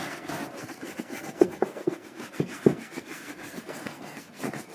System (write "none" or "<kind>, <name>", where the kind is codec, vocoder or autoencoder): codec, SNAC